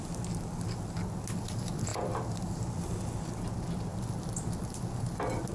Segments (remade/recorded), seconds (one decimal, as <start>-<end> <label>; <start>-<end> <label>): 0.0-5.5 recorded